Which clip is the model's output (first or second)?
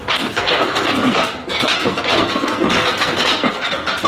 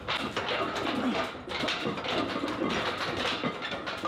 first